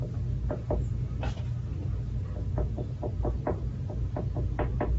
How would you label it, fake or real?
real